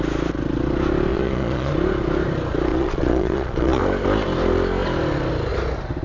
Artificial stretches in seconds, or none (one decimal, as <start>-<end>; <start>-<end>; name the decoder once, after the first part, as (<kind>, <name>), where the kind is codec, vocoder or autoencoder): 1.1-1.7 (vocoder, Vocos); 2.7-3.8